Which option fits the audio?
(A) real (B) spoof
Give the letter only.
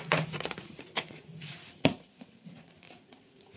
B